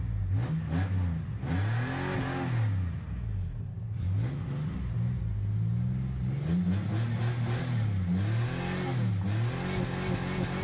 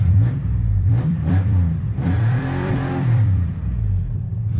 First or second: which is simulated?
second